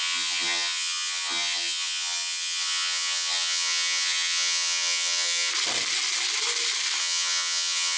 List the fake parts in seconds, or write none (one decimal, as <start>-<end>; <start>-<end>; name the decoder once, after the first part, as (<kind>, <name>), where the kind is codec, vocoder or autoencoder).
0.0-5.5 (vocoder, HiFi-GAN); 7.0-8.0